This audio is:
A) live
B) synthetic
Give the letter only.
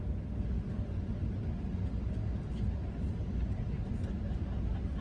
A